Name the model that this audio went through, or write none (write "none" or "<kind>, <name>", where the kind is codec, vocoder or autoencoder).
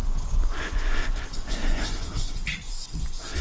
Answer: vocoder, Vocos